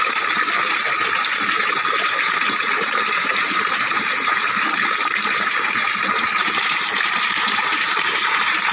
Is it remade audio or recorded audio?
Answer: remade